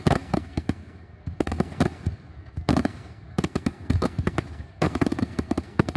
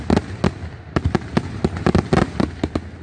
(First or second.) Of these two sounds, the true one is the second